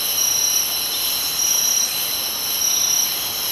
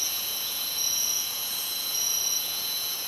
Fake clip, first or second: second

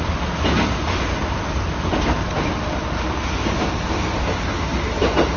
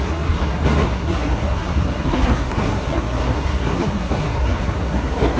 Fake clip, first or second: second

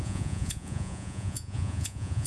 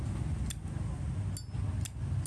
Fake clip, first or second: first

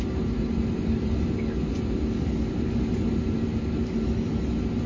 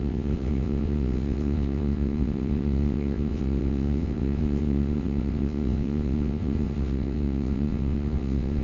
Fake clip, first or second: second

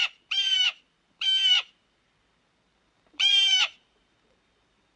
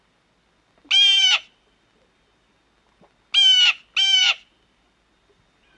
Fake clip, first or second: first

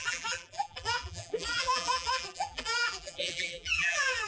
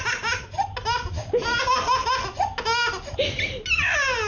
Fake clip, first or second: first